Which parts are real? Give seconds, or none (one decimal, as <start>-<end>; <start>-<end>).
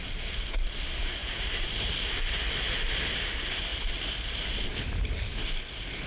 0.0-6.1